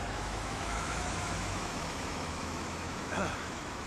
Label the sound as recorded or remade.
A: remade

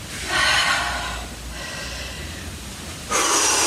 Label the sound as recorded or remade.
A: recorded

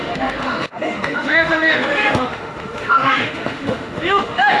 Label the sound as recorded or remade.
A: remade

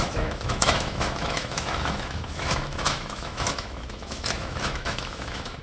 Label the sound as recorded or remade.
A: remade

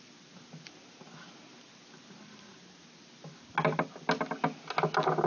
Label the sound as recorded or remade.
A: recorded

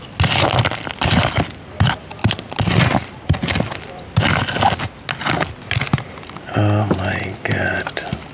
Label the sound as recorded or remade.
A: recorded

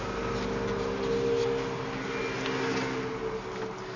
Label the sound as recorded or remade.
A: recorded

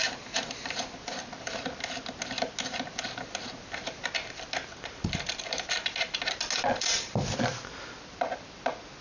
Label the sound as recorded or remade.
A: recorded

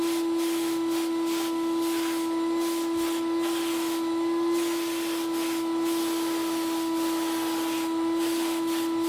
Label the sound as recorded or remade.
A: recorded